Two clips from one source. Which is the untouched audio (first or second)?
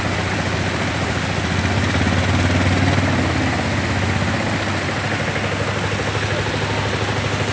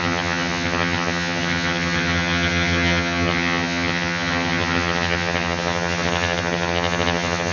first